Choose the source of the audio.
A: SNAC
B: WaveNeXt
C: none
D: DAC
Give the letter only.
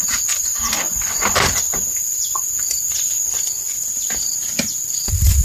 C